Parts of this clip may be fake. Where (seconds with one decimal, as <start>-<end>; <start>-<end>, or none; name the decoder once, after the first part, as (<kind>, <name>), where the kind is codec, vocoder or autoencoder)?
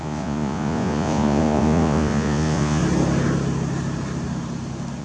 0.0-2.8 (vocoder, Vocos)